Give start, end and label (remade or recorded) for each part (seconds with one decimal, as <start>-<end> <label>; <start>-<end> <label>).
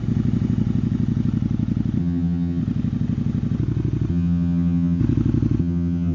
0.0-2.0 recorded; 2.0-2.6 remade; 2.6-4.1 recorded; 4.1-5.0 remade; 5.0-5.6 recorded; 5.6-6.1 remade